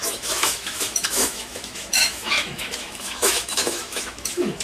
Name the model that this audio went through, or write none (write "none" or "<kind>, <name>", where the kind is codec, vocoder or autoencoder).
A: autoencoder, DAC-VAE